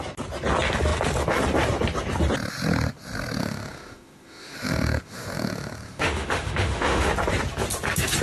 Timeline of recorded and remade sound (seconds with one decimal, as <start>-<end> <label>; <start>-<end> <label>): 0.0-3.4 recorded; 3.4-7.1 remade; 7.1-8.2 recorded